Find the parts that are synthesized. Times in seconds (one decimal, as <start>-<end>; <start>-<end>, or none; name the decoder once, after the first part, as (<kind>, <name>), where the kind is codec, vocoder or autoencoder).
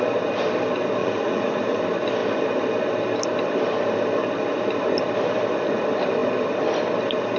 1.0-1.8 (vocoder, Vocos)